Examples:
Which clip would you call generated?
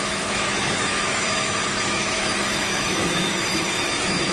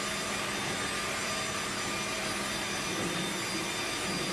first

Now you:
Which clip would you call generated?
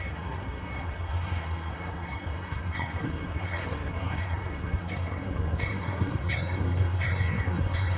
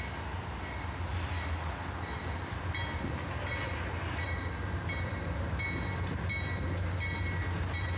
first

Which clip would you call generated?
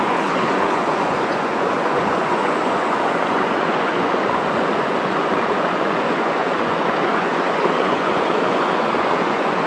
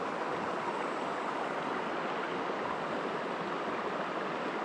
first